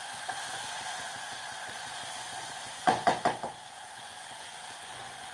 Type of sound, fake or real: fake